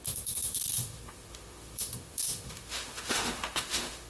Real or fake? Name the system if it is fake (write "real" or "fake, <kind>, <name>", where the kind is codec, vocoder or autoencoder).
fake, autoencoder, DAC-VAE